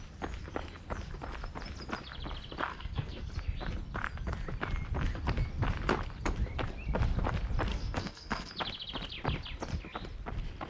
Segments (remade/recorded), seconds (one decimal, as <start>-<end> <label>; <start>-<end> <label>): 0.0-2.7 recorded; 2.7-3.3 remade; 3.3-7.7 recorded; 7.7-8.5 remade; 8.5-10.7 recorded